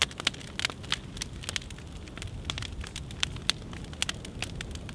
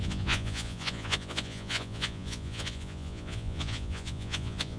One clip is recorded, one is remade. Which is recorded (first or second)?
first